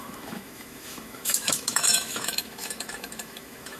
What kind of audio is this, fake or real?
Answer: fake